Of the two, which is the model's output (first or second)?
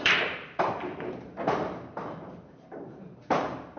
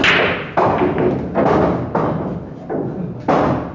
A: first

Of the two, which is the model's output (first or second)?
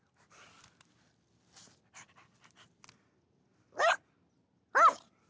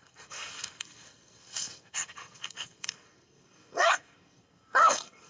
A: second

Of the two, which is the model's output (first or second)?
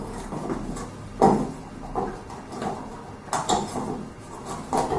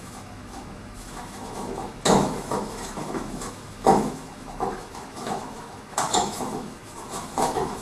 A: second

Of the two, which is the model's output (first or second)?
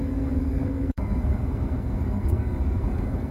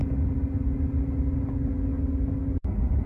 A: first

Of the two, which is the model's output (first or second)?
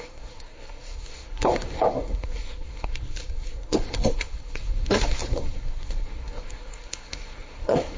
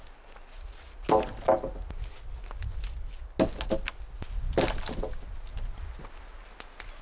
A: first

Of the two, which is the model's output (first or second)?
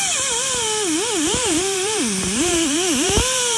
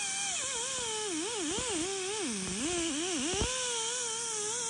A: first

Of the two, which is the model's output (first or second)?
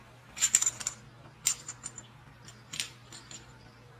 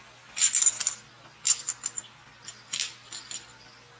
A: first